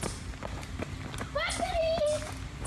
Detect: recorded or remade recorded